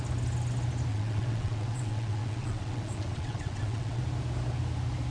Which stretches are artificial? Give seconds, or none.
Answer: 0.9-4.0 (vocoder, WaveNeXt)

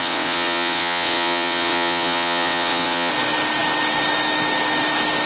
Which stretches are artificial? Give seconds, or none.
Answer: 0.0-3.1 (vocoder, WaveNeXt)

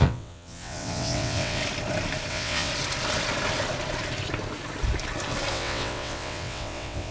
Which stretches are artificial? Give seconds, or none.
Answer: 0.0-1.6 (vocoder, WaveNeXt); 2.3-2.7; 5.5-7.1

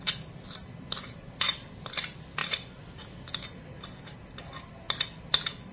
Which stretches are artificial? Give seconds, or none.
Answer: none

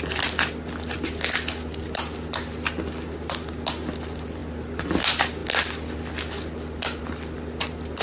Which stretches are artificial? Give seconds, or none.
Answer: none

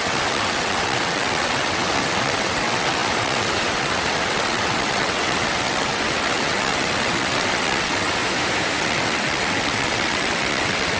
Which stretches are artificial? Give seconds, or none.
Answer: 0.0-8.2 (vocoder, WaveNeXt); 8.8-11.0

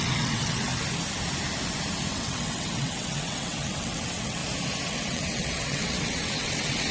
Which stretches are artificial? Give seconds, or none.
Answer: 0.0-0.7 (vocoder, WaveNeXt); 2.1-4.4; 4.9-6.9